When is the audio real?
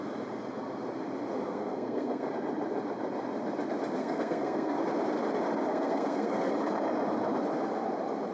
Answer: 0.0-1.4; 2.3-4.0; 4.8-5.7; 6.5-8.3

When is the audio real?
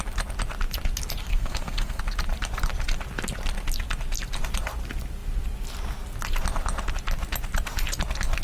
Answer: 0.0-1.3; 2.0-8.4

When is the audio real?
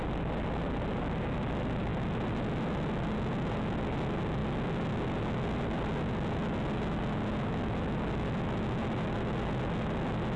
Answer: 0.0-10.4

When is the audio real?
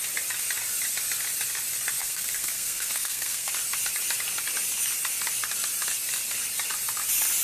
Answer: 0.0-2.0; 3.5-7.4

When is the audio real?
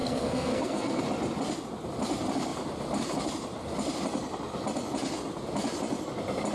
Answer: 1.0-6.5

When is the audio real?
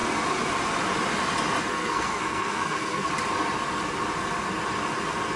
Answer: 0.0-1.7; 3.1-5.4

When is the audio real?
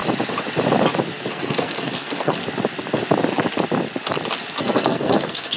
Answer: 0.0-1.3; 2.4-4.6